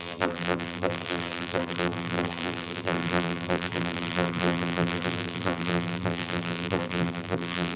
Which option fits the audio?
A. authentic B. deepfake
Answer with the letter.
B